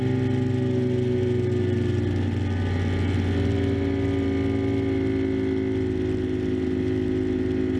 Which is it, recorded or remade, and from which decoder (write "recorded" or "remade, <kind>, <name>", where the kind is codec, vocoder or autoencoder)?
recorded